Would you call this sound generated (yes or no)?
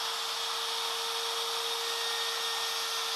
no